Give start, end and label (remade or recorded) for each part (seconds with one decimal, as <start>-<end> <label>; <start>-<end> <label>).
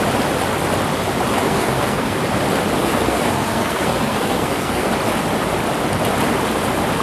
0.0-1.3 recorded; 1.3-2.2 remade; 2.2-2.8 recorded; 2.8-4.9 remade; 4.9-7.0 recorded